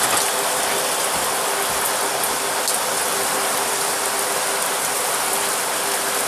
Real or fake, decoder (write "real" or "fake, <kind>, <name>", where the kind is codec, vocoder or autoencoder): real